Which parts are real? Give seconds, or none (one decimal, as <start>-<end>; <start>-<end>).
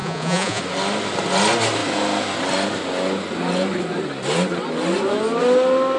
0.6-6.0